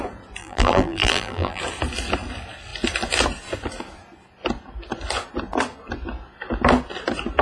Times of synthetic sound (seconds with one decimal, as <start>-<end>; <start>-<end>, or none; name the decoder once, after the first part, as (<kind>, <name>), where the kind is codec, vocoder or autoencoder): 0.4-1.6 (vocoder, BigVGAN v2)